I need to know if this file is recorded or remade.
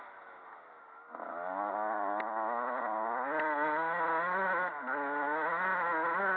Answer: recorded